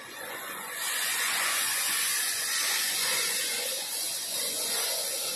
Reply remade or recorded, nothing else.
remade